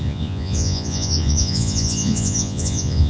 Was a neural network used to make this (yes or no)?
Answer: yes